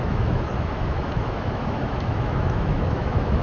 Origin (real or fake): fake